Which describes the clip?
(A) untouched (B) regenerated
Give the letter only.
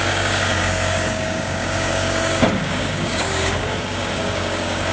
B